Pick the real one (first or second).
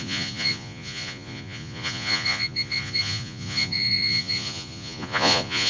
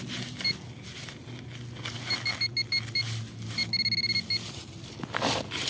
second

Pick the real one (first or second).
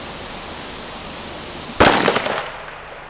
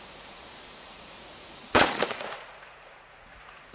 first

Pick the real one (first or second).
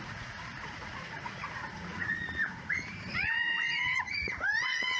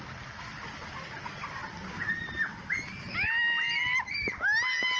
second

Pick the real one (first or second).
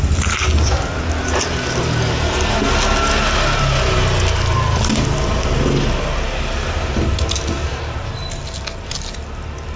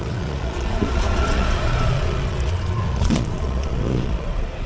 first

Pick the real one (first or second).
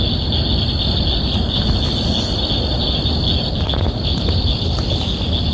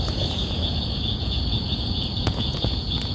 first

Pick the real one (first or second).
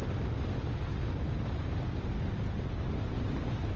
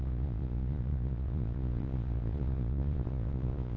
first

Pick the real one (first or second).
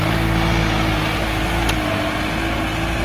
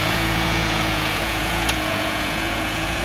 first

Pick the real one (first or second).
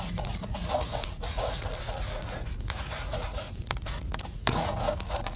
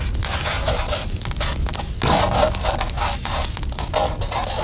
second